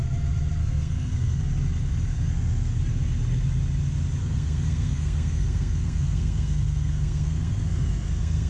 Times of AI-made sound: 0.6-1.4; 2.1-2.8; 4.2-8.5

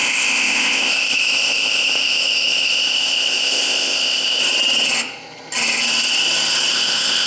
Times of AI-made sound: 0.0-4.4; 6.7-7.3

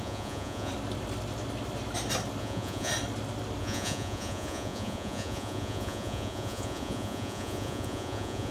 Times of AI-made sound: 0.0-0.7; 2.4-2.9; 3.6-8.5